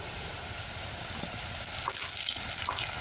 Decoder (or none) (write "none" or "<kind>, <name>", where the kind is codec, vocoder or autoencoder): none